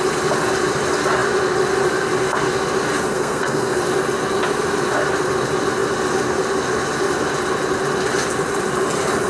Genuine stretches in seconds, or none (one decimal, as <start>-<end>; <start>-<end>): 0.0-3.1; 3.8-9.3